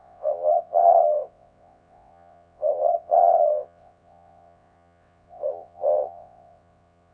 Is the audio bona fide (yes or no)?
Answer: no